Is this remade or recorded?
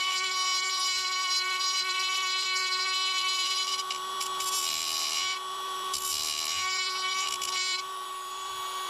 remade